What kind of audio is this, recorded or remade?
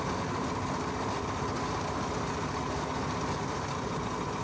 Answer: recorded